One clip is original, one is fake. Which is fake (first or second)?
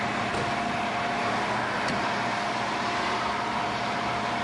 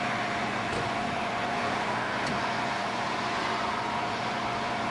second